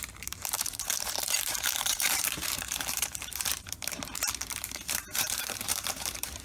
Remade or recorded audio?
remade